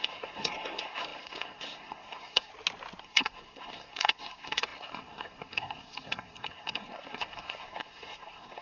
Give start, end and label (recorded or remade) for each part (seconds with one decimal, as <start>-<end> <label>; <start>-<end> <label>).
0.0-2.5 remade; 2.5-3.0 recorded; 3.0-8.6 remade

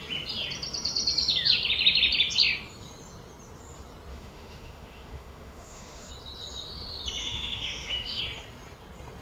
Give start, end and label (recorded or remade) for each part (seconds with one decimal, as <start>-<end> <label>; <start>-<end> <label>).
0.0-4.1 recorded; 4.1-6.1 remade; 6.1-7.2 recorded; 7.2-8.2 remade; 8.2-9.2 recorded

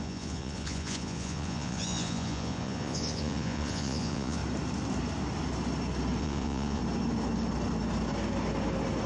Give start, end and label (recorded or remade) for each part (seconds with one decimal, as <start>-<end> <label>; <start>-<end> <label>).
0.0-4.4 remade; 4.4-6.2 recorded; 6.2-6.8 remade; 6.8-9.1 recorded

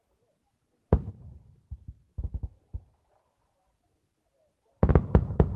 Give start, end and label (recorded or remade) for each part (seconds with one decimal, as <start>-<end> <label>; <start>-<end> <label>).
0.0-2.1 recorded; 2.1-2.6 remade; 2.6-5.6 recorded

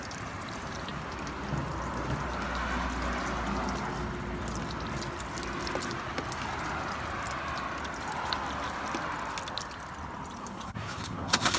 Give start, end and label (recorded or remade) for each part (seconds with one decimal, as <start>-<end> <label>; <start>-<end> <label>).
0.0-10.4 recorded; 10.4-11.6 remade

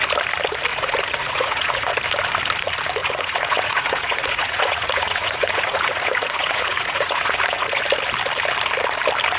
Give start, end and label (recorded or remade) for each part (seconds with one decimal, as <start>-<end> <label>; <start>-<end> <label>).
0.0-0.7 recorded; 0.7-1.9 remade; 1.9-3.0 recorded; 3.0-7.8 remade; 7.8-9.4 recorded